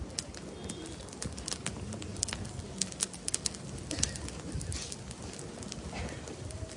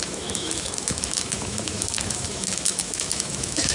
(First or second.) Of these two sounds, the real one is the first